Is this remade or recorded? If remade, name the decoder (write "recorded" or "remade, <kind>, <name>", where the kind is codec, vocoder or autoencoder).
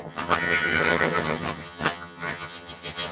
remade, vocoder, HiFi-GAN